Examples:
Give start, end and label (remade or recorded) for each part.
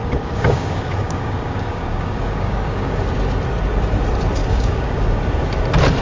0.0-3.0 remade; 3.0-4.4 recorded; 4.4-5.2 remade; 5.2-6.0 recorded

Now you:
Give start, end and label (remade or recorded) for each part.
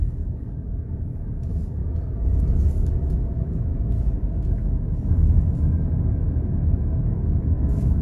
0.0-1.8 remade; 1.8-2.4 recorded; 2.4-3.7 remade; 3.7-4.3 recorded; 4.3-8.0 remade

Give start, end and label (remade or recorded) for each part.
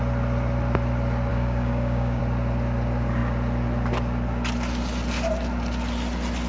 0.0-1.3 recorded; 1.3-2.2 remade; 2.2-6.5 recorded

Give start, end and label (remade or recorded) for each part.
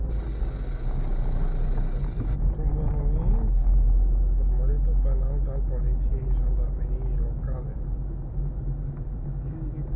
0.0-10.0 recorded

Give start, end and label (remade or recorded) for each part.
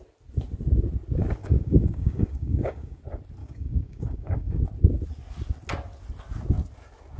0.0-1.4 recorded; 1.4-3.0 remade; 3.0-3.4 recorded; 3.4-4.6 remade; 4.6-7.2 recorded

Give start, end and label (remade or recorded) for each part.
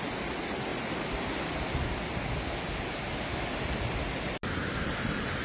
0.0-5.4 recorded